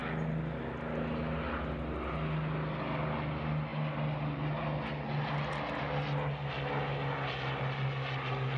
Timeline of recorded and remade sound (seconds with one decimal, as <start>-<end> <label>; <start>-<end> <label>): 0.0-8.6 recorded